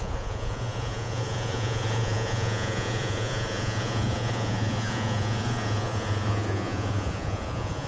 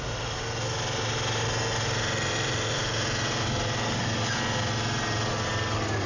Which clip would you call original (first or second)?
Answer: second